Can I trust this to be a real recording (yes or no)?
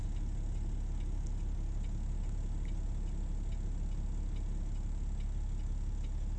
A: yes